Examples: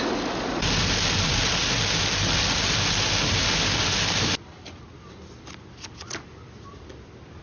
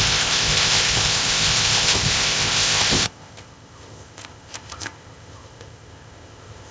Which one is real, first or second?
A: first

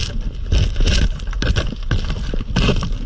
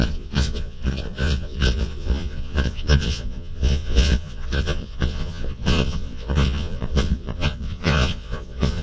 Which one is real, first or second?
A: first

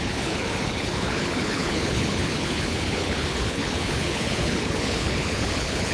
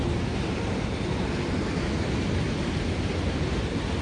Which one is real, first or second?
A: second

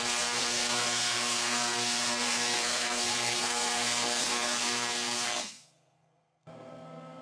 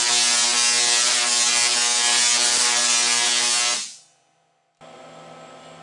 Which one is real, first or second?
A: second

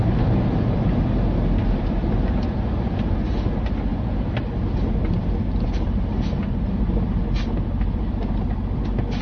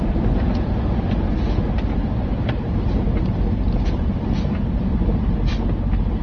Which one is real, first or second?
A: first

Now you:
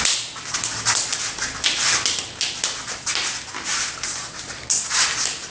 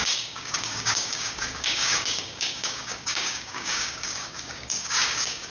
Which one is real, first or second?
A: first